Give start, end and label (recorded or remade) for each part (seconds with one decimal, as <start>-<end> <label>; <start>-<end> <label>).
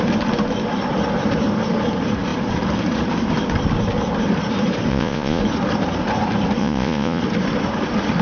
0.0-4.9 recorded; 4.9-5.4 remade; 5.4-6.6 recorded; 6.6-7.2 remade; 7.2-8.2 recorded